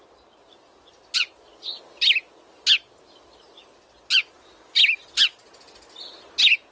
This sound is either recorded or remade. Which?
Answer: recorded